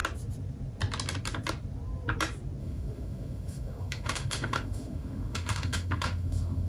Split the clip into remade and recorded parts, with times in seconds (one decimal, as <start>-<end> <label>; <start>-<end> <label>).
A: 0.0-2.6 recorded; 2.6-6.7 remade